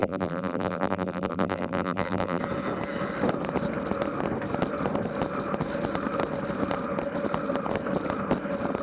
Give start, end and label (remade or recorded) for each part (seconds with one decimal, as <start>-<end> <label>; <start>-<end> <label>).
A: 0.0-2.4 remade; 2.4-8.8 recorded